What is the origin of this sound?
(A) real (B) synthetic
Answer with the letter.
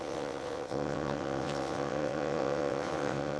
B